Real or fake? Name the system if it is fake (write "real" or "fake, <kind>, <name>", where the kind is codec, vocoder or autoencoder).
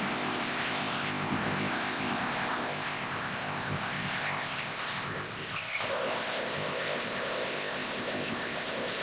fake, codec, ZipCodec